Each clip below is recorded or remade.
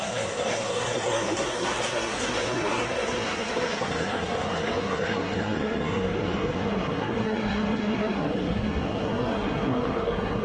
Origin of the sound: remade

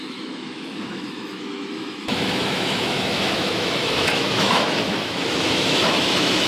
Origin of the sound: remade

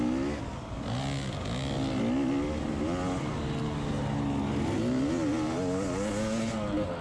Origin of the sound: recorded